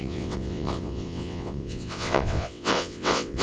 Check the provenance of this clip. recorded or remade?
remade